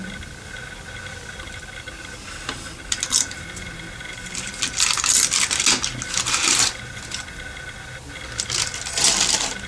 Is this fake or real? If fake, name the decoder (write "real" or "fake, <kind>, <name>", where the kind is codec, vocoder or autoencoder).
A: real